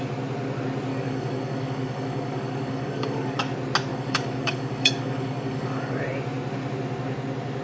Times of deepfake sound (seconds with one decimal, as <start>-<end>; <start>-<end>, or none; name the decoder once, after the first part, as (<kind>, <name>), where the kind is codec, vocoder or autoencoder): 0.9-3.4 (codec, DAC); 3.9-6.0